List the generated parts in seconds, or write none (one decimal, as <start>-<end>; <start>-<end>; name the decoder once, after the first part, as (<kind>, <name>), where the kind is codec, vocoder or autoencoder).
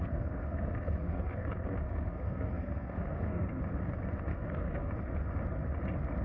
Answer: 0.0-3.6 (codec, SNAC); 4.3-4.9